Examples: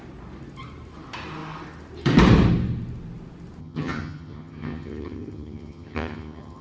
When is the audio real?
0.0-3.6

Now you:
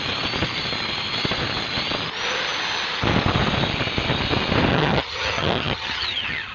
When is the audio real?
0.0-4.7